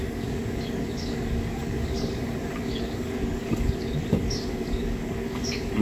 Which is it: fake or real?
fake